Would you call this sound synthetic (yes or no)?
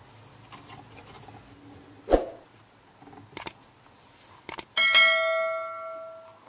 no